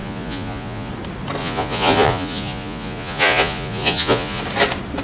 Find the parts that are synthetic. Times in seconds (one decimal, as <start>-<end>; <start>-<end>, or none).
0.0-0.9; 1.4-4.4